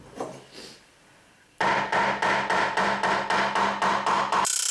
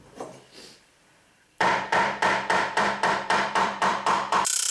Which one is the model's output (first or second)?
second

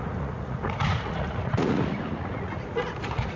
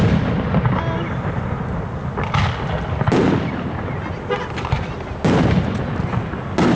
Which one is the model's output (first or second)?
first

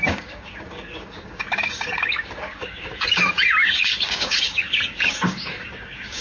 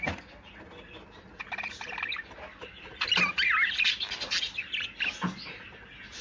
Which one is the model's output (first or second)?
first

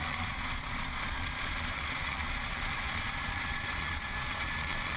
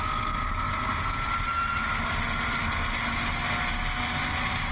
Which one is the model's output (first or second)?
first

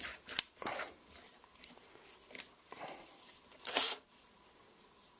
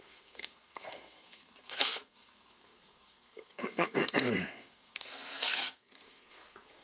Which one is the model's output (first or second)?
second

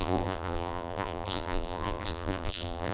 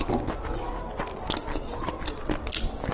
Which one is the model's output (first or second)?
first